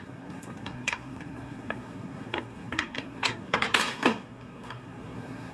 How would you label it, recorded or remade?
remade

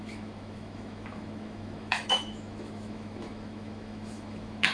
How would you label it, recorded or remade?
remade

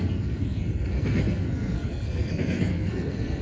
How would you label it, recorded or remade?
remade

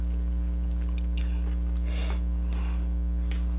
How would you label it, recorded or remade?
recorded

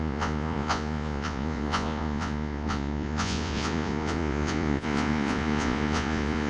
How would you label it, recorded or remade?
remade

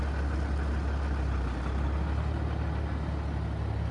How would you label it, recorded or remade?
recorded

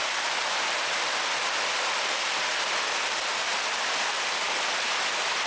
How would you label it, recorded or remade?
recorded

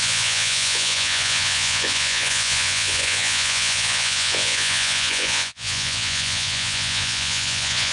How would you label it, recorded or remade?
remade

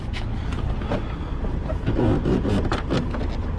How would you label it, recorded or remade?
recorded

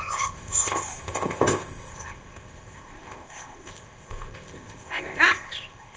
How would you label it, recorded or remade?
remade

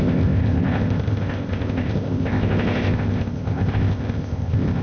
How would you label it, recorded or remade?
remade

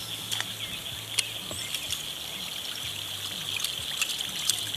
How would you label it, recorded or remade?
recorded